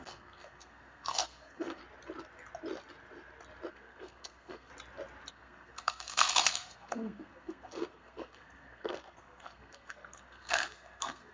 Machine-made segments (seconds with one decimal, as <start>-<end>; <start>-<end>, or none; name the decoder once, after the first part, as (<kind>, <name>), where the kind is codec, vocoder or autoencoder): 0.0-1.8 (codec, SNAC); 3.7-4.7; 5.3-11.3

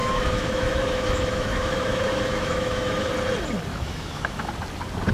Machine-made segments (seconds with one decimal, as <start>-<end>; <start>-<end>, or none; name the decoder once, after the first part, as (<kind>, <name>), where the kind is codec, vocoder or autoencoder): 0.0-3.1 (autoencoder, DAC-VAE); 3.7-4.5

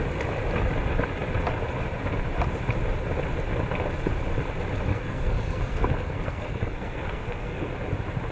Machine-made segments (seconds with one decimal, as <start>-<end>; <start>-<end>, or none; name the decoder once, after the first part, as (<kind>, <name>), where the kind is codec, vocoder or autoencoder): 4.9-7.7 (codec, SNAC)

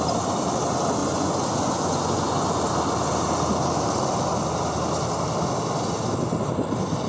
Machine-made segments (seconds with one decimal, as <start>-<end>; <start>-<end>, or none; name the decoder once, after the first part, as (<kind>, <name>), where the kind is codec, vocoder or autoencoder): 1.0-2.6 (vocoder, Vocos)

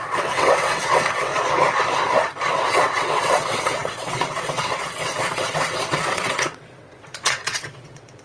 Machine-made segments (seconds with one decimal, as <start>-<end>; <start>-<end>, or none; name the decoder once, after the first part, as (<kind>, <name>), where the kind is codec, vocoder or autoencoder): 0.0-1.3 (vocoder, WaveNeXt); 2.5-8.2

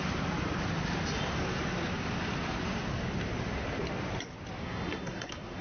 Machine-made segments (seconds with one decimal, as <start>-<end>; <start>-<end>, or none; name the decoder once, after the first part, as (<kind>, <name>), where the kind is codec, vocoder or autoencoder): 4.6-5.6 (codec, SNAC)

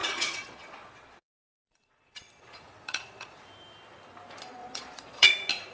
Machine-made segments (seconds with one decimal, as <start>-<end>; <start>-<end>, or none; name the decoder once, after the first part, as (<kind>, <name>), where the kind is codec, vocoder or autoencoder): 0.0-3.4 (vocoder, Vocos); 4.6-5.3

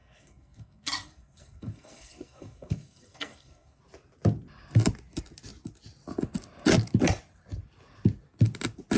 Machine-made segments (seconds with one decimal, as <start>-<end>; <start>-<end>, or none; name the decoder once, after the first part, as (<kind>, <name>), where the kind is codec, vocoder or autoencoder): 0.0-3.8 (codec, SNAC)